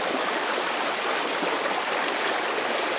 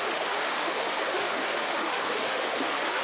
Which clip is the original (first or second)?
first